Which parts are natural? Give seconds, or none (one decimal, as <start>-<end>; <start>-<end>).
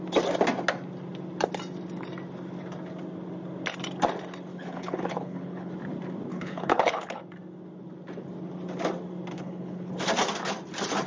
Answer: 0.0-4.5; 5.7-6.3; 7.2-9.3; 9.9-11.1